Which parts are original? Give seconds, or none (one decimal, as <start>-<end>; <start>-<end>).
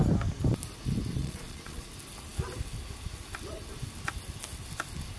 0.0-1.2; 1.9-5.2